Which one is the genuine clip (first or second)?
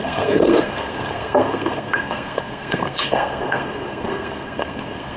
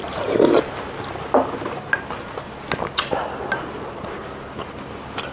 second